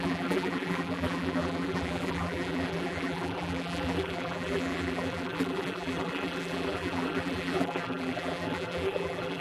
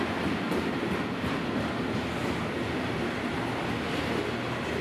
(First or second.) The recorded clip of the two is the second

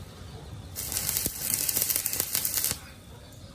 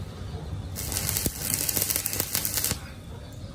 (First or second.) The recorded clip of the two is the second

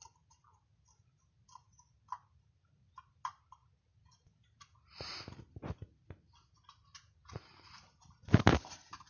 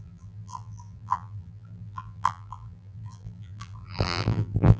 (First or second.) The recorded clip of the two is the first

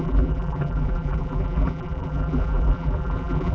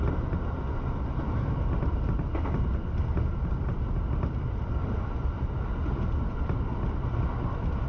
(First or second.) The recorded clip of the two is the second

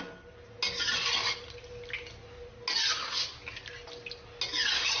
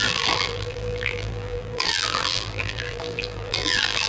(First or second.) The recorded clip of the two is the first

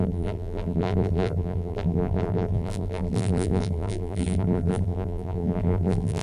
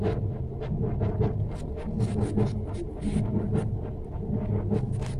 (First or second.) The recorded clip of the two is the second